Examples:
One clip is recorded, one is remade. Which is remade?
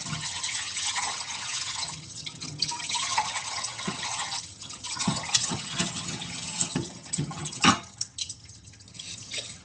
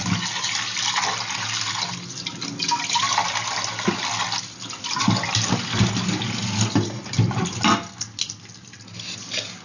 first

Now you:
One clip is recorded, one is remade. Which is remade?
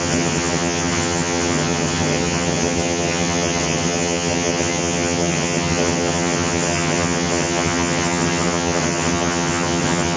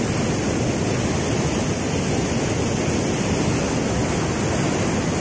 first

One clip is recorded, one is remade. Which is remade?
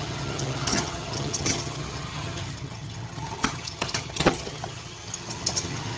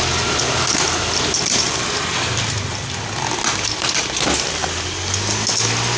first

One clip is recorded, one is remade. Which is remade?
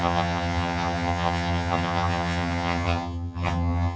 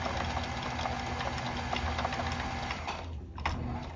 first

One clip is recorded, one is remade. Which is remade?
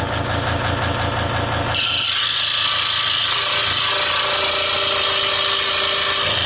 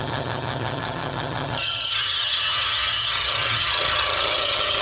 second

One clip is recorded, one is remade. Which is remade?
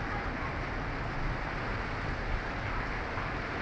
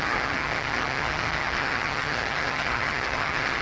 second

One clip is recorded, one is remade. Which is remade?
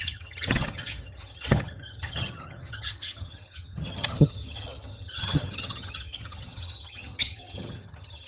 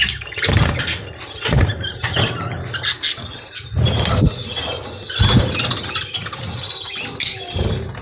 first